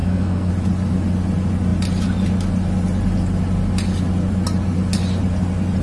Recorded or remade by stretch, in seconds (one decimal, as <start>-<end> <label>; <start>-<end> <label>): 0.0-0.5 remade; 0.5-5.8 recorded